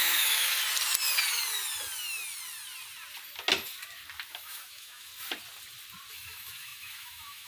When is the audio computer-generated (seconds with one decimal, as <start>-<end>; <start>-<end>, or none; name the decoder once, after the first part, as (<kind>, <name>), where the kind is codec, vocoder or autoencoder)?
0.0-0.5 (autoencoder, DAC-VAE); 4.3-5.1; 6.1-7.5